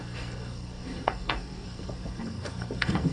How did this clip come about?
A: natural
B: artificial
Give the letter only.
B